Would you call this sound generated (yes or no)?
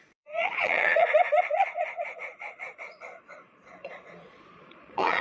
yes